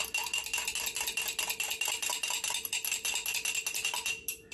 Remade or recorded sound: recorded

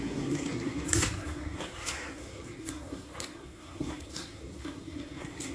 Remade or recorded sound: remade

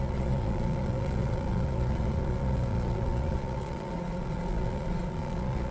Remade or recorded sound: remade